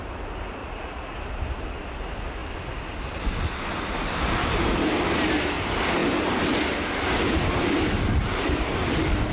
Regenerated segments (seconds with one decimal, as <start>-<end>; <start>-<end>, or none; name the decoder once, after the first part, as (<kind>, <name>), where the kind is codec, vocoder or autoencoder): 0.6-1.2 (vocoder, Vocos)